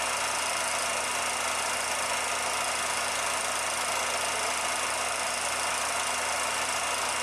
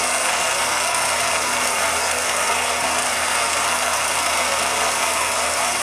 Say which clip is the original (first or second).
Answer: first